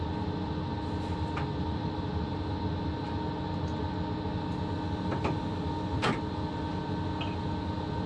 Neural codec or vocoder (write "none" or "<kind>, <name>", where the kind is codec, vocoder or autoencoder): none